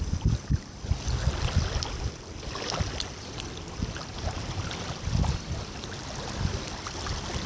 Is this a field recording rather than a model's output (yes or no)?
yes